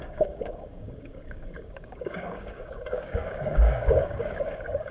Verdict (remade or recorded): remade